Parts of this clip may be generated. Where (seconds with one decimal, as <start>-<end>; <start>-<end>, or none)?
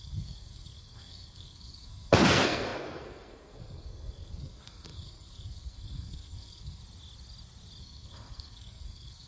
0.0-6.8; 7.8-9.3